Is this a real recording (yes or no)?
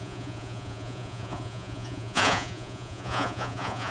no